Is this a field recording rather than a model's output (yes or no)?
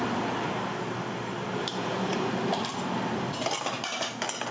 yes